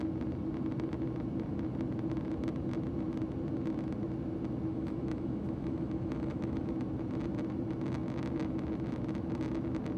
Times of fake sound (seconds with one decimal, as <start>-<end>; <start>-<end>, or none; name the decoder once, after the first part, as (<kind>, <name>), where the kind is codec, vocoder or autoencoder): 4.7-6.7 (autoencoder, DAC-VAE)